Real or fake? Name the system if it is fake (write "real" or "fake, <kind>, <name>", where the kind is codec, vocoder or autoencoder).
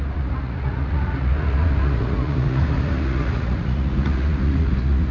fake, vocoder, Vocos